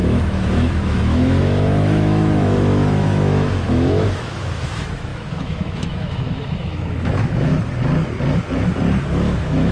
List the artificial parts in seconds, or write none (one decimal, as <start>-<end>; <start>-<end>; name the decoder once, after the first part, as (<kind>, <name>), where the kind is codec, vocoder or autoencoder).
0.0-7.5 (autoencoder, DAC-VAE); 9.1-9.7